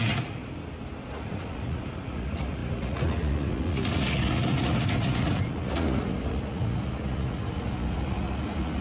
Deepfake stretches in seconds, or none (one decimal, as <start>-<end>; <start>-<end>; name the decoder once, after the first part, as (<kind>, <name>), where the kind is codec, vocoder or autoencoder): 0.0-0.4 (vocoder, Vocos); 1.0-8.8